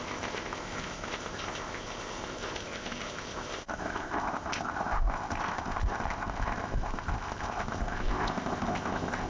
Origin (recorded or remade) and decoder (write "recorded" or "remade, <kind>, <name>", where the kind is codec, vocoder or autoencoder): remade, codec, ZipCodec